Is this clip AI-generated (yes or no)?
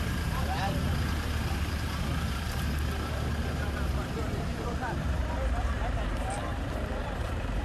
yes